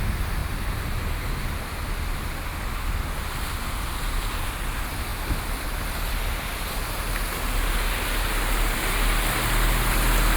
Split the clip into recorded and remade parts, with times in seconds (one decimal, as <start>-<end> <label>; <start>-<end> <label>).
0.0-0.4 recorded; 0.4-1.3 remade; 1.3-10.4 recorded